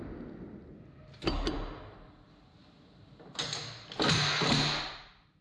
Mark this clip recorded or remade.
recorded